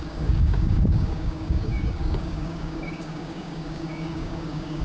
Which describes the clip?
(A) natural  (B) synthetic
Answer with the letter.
B